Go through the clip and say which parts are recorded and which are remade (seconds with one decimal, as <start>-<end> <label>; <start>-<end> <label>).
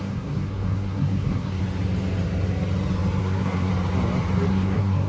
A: 0.0-1.6 remade; 1.6-3.2 recorded; 3.2-3.7 remade; 3.7-4.5 recorded; 4.5-5.1 remade